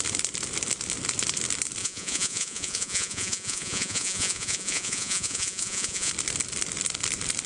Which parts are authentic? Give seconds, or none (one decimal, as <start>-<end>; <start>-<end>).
0.0-1.8; 6.1-7.5